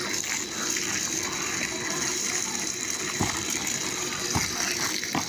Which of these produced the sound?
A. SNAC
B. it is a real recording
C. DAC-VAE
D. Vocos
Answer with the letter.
B